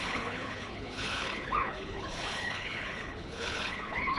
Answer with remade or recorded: remade